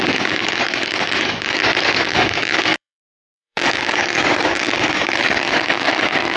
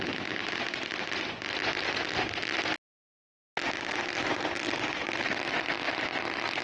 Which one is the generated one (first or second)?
first